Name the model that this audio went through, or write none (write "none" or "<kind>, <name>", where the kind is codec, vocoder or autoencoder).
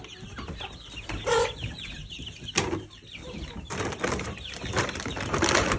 none